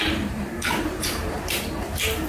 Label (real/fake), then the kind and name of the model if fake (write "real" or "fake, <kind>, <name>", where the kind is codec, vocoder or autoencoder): fake, vocoder, BigVGAN v2